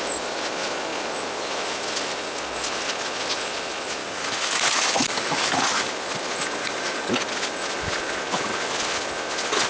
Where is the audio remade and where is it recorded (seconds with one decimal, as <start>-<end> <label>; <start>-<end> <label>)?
0.0-4.0 recorded; 4.0-5.9 remade; 5.9-6.6 recorded; 6.6-7.1 remade; 7.1-9.7 recorded